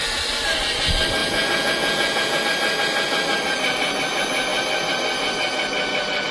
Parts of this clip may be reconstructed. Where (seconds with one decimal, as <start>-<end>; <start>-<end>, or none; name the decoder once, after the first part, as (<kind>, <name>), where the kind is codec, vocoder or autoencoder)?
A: 1.2-2.4 (vocoder, Vocos)